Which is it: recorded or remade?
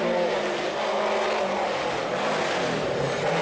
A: recorded